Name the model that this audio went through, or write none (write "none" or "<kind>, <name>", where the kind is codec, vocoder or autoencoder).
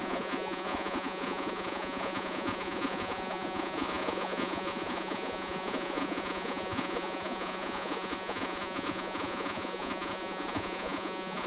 vocoder, Vocos